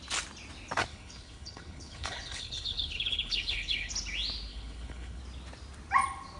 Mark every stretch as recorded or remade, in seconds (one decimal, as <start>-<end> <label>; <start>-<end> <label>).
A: 0.0-0.9 recorded; 0.9-3.9 remade; 3.9-4.5 recorded; 4.5-5.2 remade; 5.2-6.4 recorded